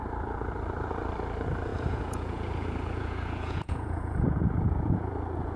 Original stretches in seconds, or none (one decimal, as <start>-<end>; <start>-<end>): 0.0-1.7; 5.1-5.6